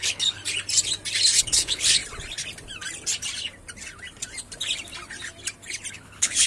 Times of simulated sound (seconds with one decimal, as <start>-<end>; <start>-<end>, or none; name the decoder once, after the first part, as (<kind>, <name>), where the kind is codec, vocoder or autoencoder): 0.0-0.4 (codec, HILCodec); 1.4-2.0; 5.9-6.5